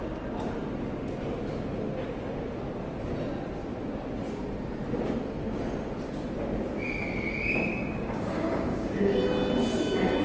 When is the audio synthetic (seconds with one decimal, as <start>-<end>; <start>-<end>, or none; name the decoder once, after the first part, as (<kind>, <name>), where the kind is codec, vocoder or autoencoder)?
7.7-9.2 (codec, DAC)